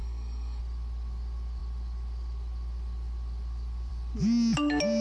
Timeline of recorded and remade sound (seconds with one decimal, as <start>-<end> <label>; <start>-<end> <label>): 0.0-0.6 remade; 0.6-5.0 recorded